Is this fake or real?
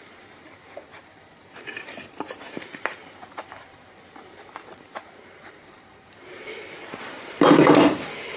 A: fake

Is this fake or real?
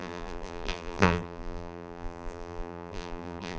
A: fake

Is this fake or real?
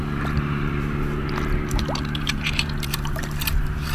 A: fake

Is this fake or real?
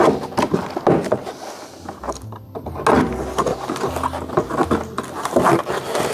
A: real